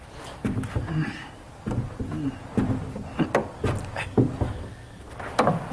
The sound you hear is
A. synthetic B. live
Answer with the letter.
B